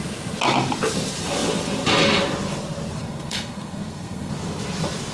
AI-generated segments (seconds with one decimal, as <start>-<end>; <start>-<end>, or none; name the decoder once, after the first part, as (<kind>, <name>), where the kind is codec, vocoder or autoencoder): 3.0-4.3 (codec, SNAC)